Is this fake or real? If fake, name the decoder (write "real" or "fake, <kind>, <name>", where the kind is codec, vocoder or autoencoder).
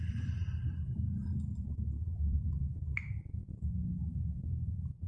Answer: fake, vocoder, BigVGAN v2